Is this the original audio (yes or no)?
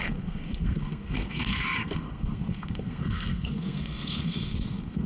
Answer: no